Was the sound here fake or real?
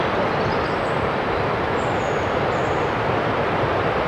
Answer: fake